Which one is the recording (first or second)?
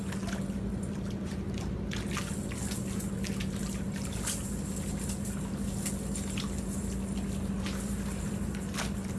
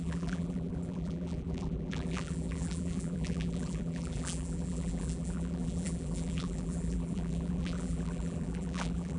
first